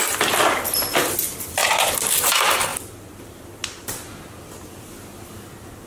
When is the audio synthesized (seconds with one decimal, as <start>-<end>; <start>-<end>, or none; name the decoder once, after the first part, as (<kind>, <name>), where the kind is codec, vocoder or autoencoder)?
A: 1.6-2.1 (vocoder, BigVGAN v2)